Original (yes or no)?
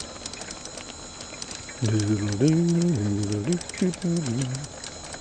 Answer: yes